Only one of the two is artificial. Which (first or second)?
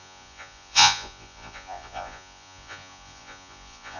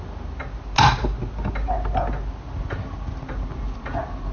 first